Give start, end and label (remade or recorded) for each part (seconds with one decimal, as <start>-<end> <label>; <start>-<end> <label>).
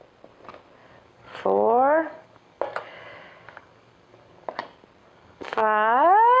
0.0-0.8 recorded; 0.8-4.5 remade; 4.5-5.0 recorded; 5.0-6.4 remade